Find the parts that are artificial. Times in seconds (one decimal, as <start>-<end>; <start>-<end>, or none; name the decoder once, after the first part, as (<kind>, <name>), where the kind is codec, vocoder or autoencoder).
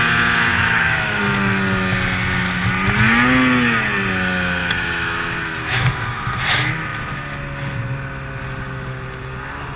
0.5-1.2 (autoencoder, DAC-VAE); 4.6-6.4